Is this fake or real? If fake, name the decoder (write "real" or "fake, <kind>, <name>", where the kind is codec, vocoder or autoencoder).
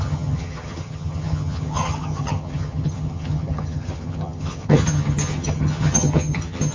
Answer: fake, vocoder, HiFi-GAN